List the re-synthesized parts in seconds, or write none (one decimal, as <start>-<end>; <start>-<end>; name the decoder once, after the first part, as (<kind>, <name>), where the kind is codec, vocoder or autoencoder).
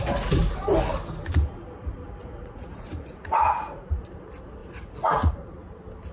2.2-4.0 (vocoder, Vocos); 4.6-5.3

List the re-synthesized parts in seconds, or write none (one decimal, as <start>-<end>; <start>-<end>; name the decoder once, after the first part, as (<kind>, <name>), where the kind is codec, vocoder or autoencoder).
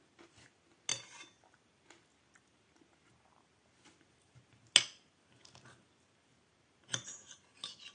none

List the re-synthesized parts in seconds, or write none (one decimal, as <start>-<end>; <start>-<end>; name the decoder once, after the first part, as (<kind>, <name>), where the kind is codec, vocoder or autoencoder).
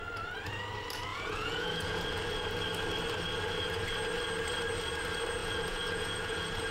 1.1-2.2 (vocoder, Vocos); 5.4-6.7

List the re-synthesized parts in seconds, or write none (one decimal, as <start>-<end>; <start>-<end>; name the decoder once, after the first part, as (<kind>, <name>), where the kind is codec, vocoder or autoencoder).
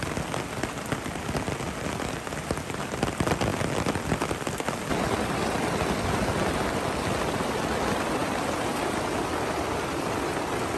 none